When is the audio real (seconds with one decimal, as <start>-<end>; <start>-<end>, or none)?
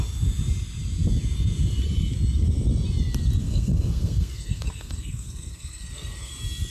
0.0-3.4; 6.3-6.7